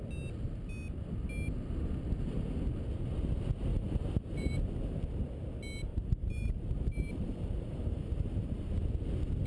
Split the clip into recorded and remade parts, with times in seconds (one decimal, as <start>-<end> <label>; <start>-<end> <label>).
0.0-3.7 recorded; 3.7-5.0 remade; 5.0-5.9 recorded; 5.9-8.7 remade; 8.7-9.5 recorded